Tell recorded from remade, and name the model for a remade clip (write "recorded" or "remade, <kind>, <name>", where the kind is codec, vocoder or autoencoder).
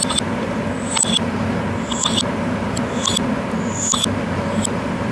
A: recorded